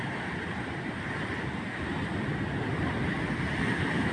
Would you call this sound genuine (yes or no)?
yes